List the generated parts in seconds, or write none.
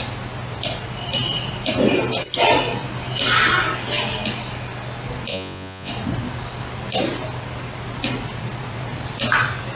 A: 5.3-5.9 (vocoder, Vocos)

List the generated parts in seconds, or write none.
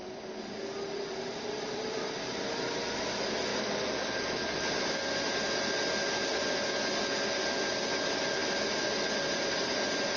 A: none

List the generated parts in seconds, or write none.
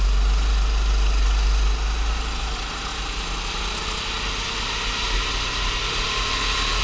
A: none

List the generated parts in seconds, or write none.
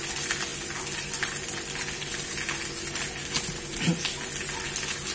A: none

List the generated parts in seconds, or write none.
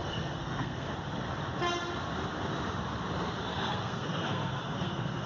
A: 0.0-0.9 (codec, SNAC); 3.5-5.3